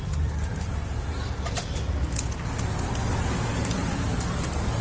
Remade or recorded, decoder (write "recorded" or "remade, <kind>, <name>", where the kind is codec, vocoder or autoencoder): recorded